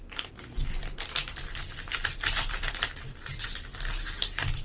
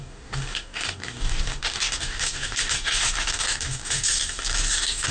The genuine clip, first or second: first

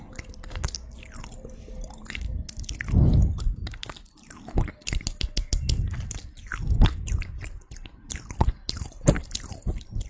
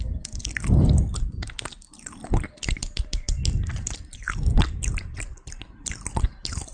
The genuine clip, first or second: first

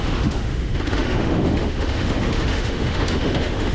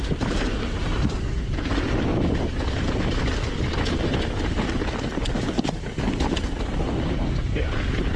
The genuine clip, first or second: second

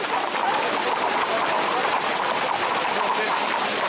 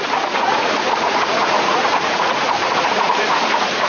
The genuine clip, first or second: first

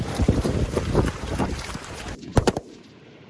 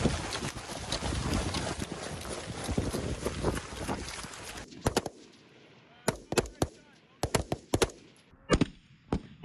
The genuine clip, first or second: second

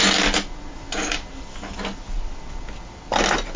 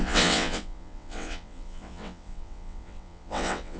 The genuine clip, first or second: first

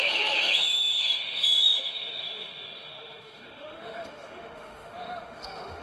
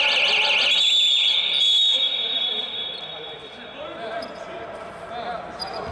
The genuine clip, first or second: second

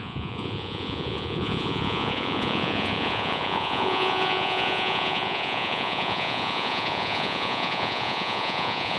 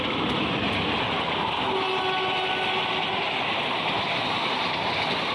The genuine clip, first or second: second